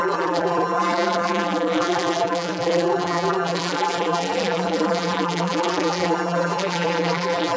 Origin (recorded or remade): remade